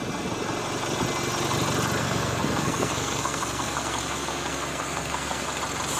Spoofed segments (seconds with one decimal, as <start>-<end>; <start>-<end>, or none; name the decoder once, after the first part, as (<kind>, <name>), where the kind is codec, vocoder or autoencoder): 2.0-5.6 (codec, SNAC)